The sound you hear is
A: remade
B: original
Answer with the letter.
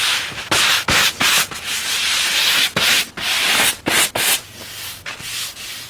B